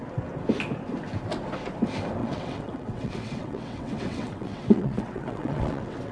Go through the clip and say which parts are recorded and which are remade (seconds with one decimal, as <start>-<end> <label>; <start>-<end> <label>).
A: 0.0-2.2 recorded; 2.2-6.1 remade